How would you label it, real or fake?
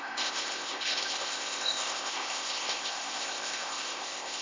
fake